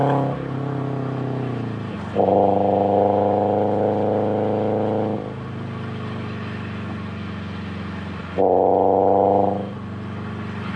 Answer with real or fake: real